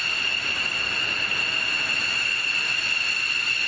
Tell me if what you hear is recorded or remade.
recorded